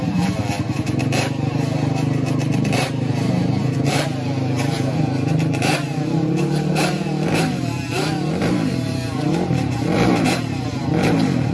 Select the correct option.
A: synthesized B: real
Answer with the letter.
A